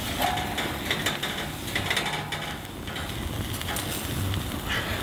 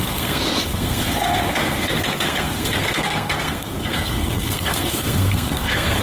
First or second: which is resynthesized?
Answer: second